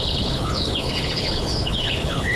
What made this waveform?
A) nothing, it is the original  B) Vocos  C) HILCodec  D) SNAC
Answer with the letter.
C